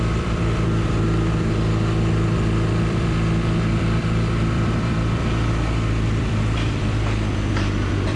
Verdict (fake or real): fake